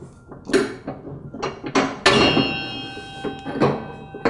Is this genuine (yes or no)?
yes